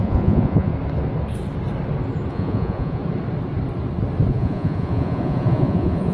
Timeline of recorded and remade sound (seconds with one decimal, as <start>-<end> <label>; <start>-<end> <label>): 0.0-0.7 remade; 0.7-2.3 recorded; 2.3-3.0 remade; 3.0-4.3 recorded; 4.3-6.1 remade